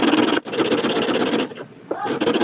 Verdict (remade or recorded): recorded